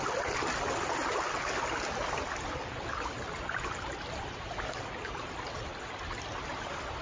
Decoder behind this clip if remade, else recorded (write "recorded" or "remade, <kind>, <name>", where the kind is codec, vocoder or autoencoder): recorded